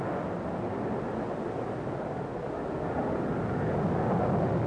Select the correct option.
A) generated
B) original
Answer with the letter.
B